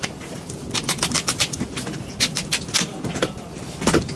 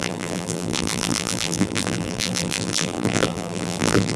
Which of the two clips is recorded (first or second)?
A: first